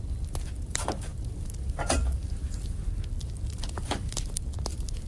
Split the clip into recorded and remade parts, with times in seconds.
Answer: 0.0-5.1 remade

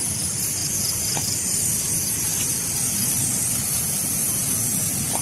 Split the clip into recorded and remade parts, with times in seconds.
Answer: 0.0-5.2 recorded